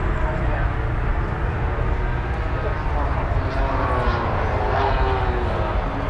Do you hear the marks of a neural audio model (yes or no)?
no